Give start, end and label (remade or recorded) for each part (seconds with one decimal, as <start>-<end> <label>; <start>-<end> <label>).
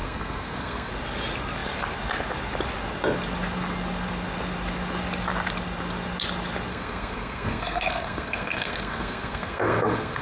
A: 0.0-0.9 remade; 0.9-6.7 recorded; 6.7-10.2 remade